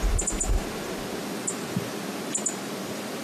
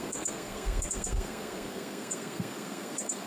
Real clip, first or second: first